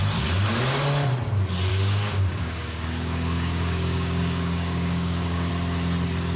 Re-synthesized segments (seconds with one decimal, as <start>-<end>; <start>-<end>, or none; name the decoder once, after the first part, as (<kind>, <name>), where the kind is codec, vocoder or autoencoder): 1.7-5.5 (codec, DAC)